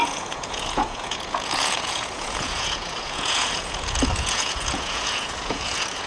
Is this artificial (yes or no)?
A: yes